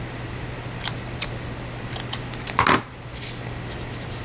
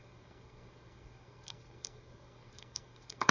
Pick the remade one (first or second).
second